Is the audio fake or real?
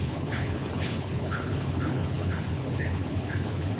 fake